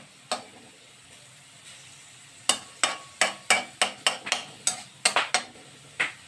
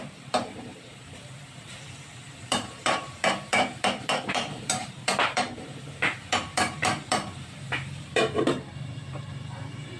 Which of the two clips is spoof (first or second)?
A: second